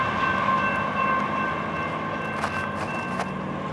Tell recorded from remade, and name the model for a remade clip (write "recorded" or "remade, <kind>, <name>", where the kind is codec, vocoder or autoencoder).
recorded